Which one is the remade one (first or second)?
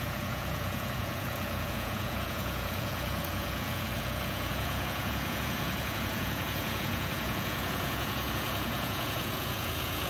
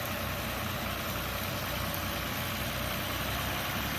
first